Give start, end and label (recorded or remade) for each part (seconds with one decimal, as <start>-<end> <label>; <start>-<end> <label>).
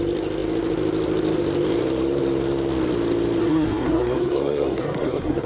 0.0-3.4 recorded; 3.4-5.5 remade